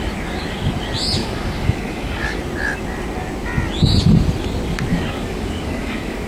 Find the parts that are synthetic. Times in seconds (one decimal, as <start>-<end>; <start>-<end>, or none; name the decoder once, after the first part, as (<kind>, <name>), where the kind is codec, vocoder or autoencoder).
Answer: 1.2-2.4 (codec, DAC); 4.9-6.3